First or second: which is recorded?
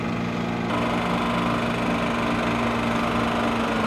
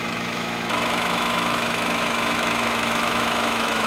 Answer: first